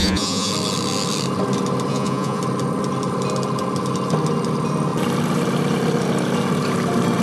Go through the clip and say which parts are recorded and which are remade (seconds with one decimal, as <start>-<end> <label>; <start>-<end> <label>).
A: 0.0-0.5 remade; 0.5-1.9 recorded; 1.9-2.4 remade; 2.4-7.2 recorded